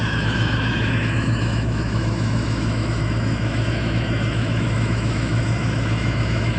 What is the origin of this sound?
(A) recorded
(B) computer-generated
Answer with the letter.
B